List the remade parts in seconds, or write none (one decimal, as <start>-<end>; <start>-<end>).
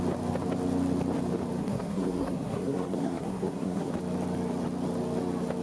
1.6-3.9